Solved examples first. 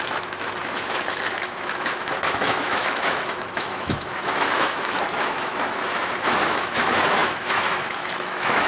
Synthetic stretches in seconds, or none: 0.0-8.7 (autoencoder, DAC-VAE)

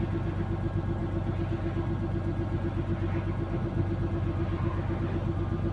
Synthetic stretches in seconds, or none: none

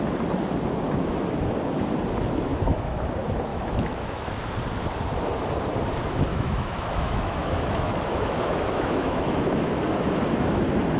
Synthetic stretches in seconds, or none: 2.5-3.0 (autoencoder, DAC-VAE); 3.5-4.3; 6.3-9.8

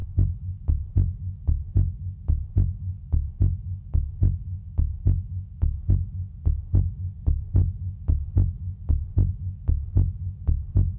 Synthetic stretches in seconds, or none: 0.0-0.6 (autoencoder, DAC-VAE); 2.9-5.8

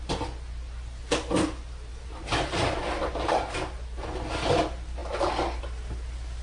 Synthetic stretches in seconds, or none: 1.9-4.1 (vocoder, BigVGAN v2); 5.0-5.6